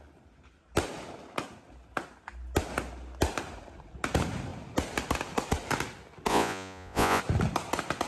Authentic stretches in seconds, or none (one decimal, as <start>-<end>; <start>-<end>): 0.0-6.3; 7.2-8.1